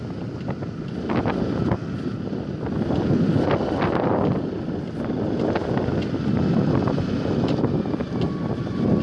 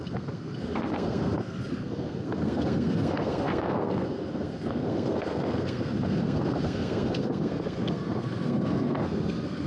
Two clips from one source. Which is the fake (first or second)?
second